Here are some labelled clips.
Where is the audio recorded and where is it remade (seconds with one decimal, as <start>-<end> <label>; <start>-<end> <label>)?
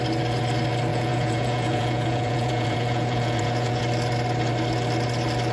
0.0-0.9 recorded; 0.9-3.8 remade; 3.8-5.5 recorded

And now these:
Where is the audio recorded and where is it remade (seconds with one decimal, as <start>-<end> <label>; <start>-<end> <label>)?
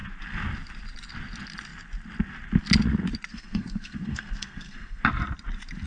0.0-3.3 recorded; 3.3-5.0 remade; 5.0-5.9 recorded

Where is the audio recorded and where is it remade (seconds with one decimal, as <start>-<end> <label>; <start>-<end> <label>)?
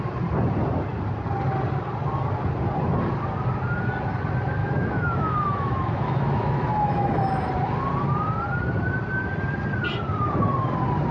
0.0-4.6 recorded; 4.6-7.3 remade; 7.3-11.1 recorded